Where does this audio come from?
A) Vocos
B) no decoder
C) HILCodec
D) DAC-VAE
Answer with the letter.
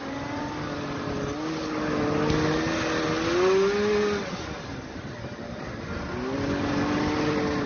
B